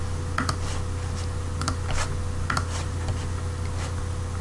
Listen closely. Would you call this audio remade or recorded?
recorded